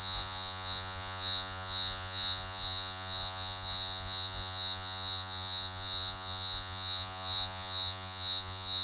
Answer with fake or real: fake